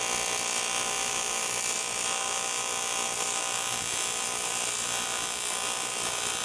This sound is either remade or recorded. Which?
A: recorded